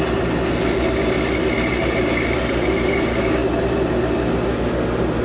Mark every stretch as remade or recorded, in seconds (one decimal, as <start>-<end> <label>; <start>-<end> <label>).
0.0-5.2 recorded